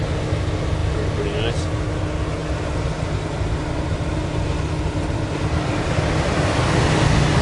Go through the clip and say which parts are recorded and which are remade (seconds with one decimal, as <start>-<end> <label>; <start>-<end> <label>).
0.0-2.4 recorded; 2.4-6.8 remade; 6.8-7.4 recorded